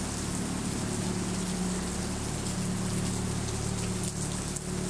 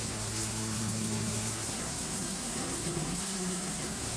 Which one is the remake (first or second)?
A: second